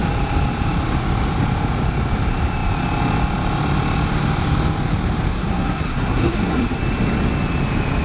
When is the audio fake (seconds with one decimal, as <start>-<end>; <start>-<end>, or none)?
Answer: 5.3-6.8